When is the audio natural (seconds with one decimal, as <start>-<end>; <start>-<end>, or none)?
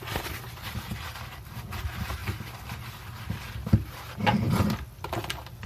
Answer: 0.0-5.7